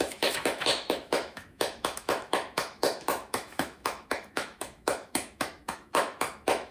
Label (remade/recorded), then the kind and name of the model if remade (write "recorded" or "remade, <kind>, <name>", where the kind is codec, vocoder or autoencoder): remade, autoencoder, DAC-VAE